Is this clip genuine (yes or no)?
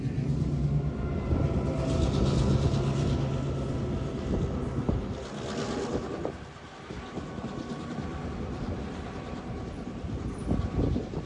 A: yes